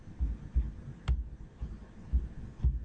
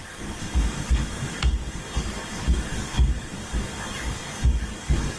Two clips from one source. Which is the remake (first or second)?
second